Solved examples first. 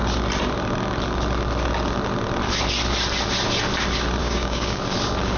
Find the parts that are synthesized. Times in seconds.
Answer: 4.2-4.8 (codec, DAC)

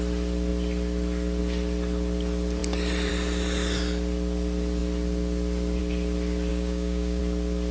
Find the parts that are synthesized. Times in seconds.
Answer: 6.5-7.2 (codec, DAC)

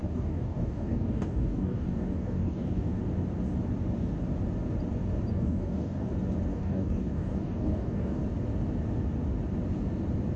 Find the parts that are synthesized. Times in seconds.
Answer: 0.0-3.0 (codec, DAC); 5.3-6.1; 6.5-8.2

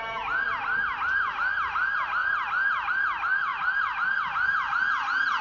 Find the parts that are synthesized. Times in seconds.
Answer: none

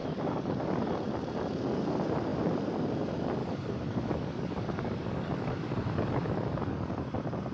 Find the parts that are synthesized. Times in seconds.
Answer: 0.0-0.9 (codec, DAC); 3.4-7.0

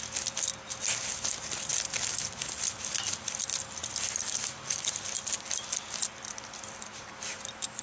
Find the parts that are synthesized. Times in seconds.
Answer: none

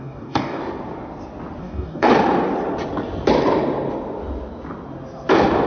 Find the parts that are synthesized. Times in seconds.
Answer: 0.0-0.6 (codec, DAC); 1.6-2.1